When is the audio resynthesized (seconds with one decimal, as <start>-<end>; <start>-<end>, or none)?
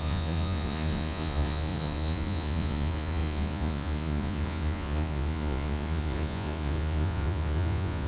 0.0-8.1